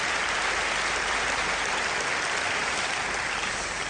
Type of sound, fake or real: real